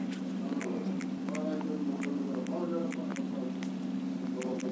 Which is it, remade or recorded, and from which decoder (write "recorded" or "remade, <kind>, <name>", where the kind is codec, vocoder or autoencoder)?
recorded